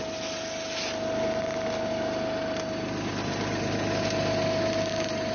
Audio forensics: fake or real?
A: real